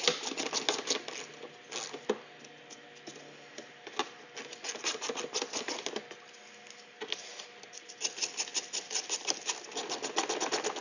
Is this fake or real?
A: real